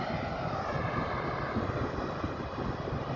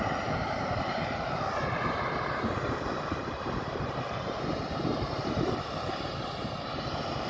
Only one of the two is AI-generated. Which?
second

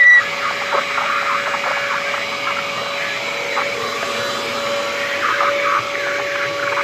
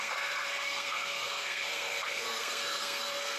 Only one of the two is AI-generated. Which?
second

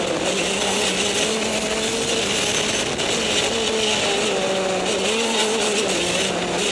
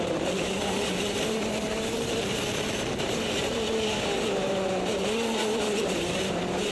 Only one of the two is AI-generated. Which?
second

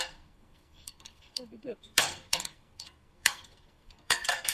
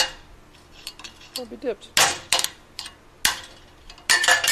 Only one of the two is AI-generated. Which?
first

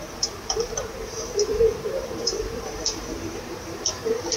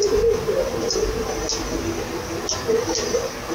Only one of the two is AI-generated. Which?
first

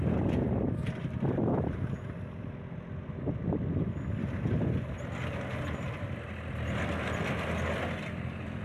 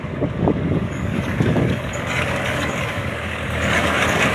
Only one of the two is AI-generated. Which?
second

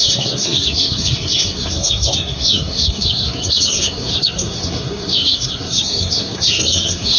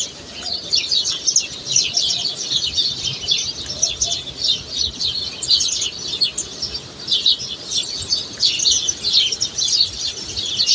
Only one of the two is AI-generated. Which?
first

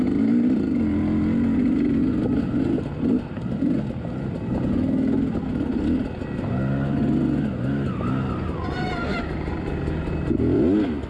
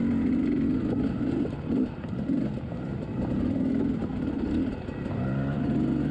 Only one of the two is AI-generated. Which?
second